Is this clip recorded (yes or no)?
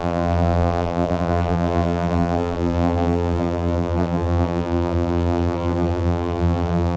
no